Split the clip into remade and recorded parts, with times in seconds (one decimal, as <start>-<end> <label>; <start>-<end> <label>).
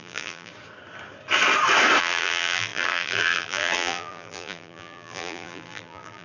0.0-0.5 remade; 0.5-2.0 recorded; 2.0-6.2 remade